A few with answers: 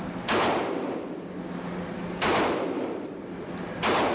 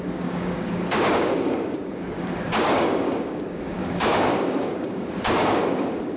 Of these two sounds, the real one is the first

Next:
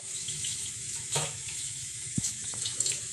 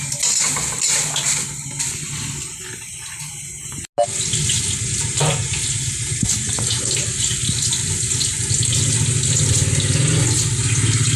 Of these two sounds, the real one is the second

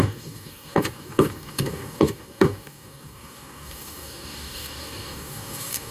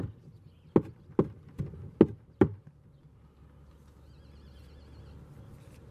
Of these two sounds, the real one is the second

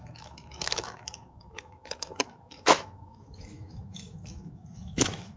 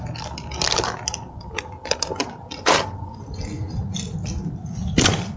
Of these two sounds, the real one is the second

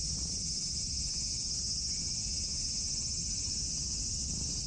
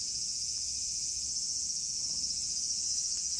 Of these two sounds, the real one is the first